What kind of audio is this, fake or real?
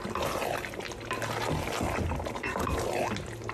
real